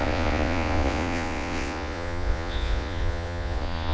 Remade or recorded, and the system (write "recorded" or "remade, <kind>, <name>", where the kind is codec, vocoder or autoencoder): remade, vocoder, Vocos